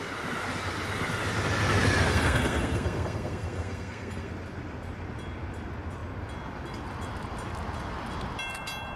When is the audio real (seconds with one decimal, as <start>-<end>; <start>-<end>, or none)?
0.0-2.1; 4.3-9.0